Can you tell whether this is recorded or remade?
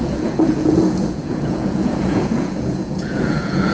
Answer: remade